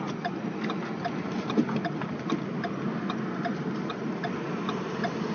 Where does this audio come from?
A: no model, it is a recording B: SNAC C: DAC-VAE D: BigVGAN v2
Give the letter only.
A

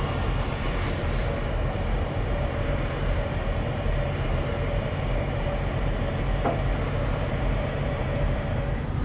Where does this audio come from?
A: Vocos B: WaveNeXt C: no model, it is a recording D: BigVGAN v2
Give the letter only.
D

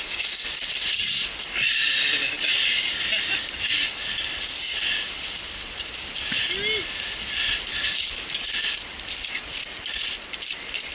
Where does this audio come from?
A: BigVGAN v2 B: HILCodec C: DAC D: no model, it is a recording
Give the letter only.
D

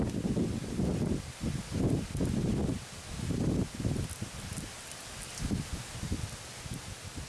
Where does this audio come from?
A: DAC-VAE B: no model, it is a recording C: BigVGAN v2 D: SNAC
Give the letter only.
B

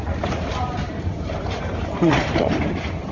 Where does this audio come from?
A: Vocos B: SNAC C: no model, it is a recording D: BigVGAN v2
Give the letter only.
D